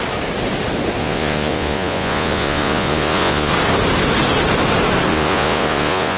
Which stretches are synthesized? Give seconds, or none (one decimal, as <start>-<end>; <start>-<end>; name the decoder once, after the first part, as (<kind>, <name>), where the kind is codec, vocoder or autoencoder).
1.0-3.5 (vocoder, Vocos); 5.1-6.2